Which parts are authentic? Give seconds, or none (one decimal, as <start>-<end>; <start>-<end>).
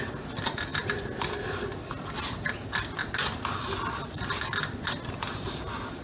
0.0-6.0